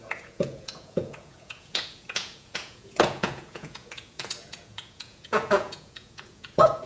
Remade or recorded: remade